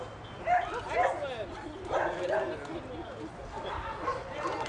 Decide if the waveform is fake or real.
real